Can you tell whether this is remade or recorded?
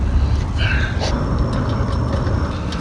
recorded